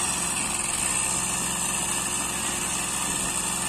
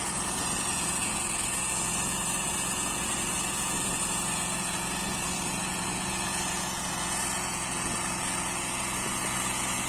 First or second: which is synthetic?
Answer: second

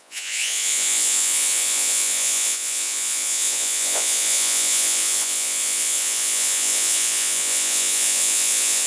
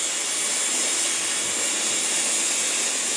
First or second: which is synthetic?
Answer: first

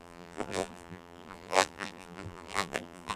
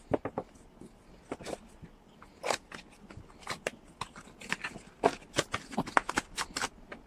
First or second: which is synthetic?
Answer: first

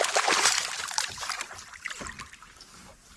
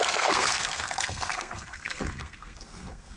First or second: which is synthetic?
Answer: second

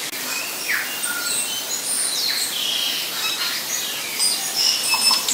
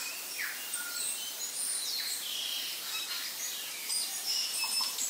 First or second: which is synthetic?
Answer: second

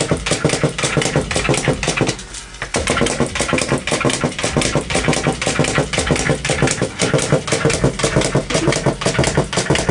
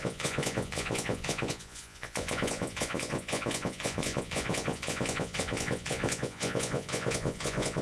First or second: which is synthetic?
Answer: second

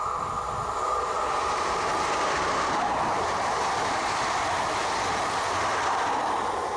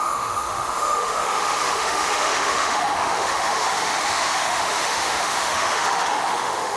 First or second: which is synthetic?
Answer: second